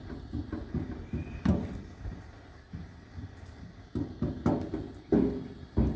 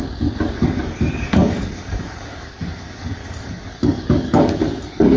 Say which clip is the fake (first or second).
second